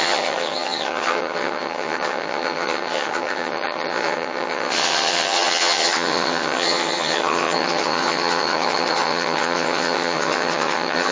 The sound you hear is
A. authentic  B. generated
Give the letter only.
B